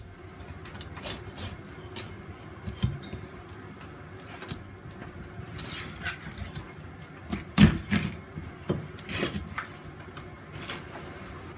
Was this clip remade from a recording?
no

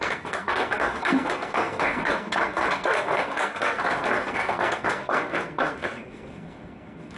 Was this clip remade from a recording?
yes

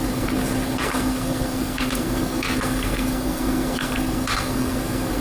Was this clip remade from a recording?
yes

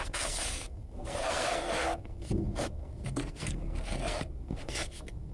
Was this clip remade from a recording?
yes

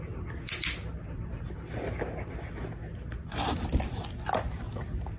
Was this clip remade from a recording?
no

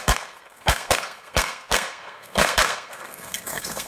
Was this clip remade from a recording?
yes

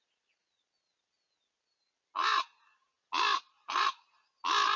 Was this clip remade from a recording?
no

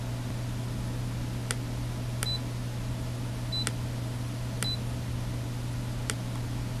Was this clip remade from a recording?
no